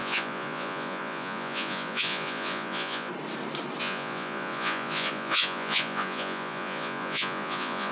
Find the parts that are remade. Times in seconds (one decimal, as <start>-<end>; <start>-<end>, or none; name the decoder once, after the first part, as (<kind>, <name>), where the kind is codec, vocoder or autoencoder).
0.0-3.1 (vocoder, Vocos); 3.8-7.9